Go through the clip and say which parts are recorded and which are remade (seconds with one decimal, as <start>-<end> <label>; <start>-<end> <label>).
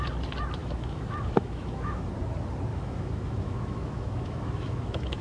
0.0-0.6 recorded; 0.6-2.1 remade; 2.1-2.7 recorded; 2.7-5.2 remade